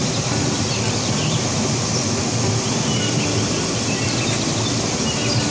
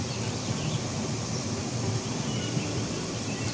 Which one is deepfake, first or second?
second